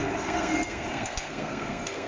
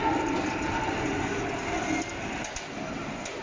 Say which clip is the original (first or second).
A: second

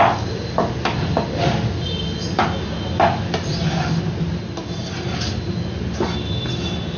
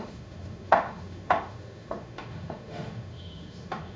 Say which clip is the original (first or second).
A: first